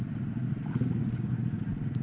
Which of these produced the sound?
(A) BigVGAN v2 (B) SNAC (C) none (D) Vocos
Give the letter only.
C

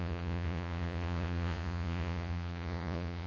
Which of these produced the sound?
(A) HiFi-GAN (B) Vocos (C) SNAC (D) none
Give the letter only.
B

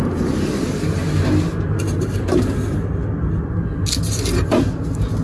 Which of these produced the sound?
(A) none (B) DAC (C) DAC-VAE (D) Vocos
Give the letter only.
A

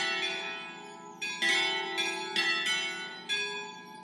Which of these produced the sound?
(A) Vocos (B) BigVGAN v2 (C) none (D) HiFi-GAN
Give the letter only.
C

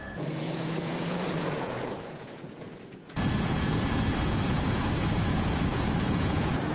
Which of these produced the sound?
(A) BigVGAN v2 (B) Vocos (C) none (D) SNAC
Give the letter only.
B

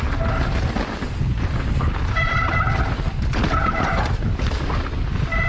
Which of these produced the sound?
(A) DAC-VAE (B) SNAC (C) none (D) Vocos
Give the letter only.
C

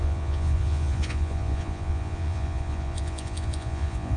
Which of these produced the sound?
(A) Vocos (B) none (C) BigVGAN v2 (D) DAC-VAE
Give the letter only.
A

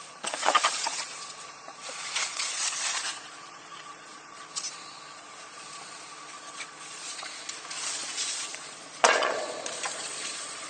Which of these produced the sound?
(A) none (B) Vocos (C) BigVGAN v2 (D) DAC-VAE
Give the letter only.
B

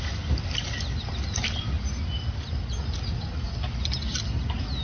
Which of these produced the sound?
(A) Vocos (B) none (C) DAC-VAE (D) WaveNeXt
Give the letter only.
B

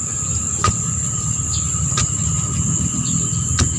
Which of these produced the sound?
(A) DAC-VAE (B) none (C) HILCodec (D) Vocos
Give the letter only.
B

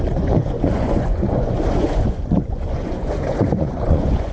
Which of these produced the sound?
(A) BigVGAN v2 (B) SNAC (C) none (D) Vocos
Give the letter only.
D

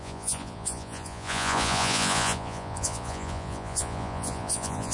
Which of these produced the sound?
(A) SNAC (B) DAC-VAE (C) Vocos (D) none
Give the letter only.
C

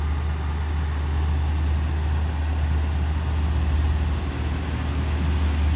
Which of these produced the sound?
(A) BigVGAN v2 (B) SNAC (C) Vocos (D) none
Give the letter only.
D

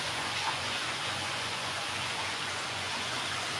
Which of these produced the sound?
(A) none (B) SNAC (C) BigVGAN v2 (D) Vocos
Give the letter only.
D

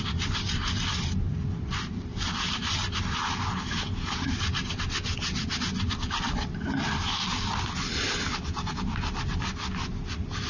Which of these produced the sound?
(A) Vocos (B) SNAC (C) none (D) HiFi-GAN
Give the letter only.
C